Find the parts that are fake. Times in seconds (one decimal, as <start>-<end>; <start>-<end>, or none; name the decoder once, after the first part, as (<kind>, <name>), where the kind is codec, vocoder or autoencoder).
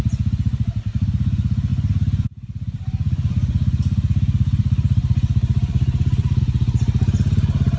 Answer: 1.7-6.4 (vocoder, BigVGAN v2)